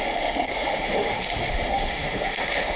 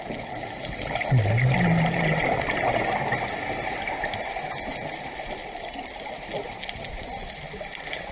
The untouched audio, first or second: second